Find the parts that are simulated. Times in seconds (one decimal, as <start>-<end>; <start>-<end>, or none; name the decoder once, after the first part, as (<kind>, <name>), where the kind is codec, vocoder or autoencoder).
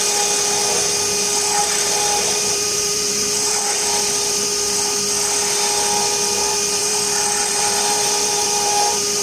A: 1.6-3.9 (vocoder, BigVGAN v2); 6.8-9.2